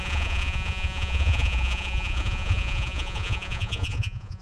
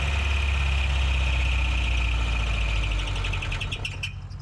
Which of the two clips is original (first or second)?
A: second